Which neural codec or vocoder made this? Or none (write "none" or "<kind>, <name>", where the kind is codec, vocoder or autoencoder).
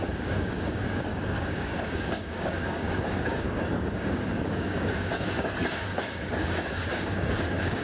codec, DAC